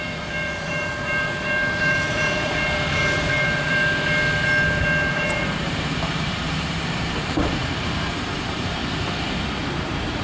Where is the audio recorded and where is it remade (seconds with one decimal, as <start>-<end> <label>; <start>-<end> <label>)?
0.0-3.8 remade; 3.8-5.1 recorded; 5.1-8.8 remade; 8.8-9.7 recorded; 9.7-10.2 remade